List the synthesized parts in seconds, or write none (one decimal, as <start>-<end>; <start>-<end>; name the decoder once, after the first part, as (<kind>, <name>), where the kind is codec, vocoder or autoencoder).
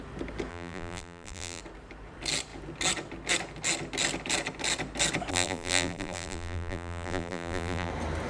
0.5-1.6 (vocoder, BigVGAN v2); 5.3-7.9